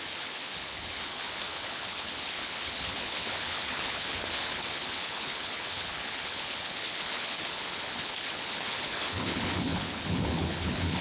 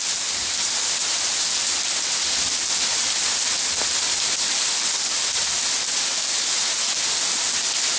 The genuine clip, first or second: second